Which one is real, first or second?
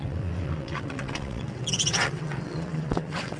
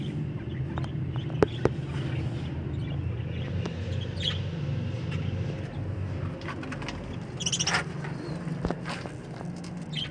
second